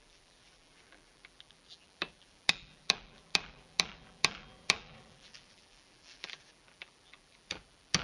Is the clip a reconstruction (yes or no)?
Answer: yes